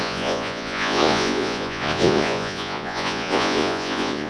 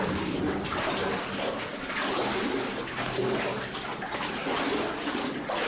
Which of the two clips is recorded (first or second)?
second